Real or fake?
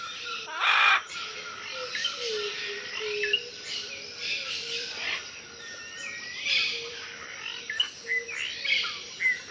real